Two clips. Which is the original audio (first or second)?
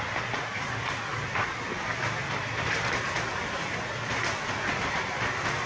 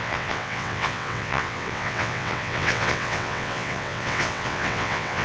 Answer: first